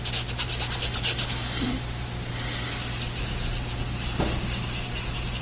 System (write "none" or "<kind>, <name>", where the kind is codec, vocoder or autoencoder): none